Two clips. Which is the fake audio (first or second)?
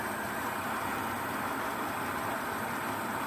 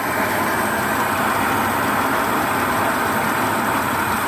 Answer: first